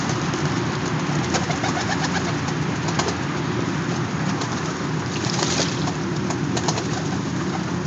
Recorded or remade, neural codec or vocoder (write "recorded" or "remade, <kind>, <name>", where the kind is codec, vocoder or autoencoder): recorded